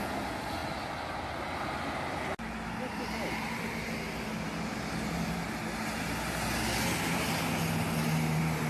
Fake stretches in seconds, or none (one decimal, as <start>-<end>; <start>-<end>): none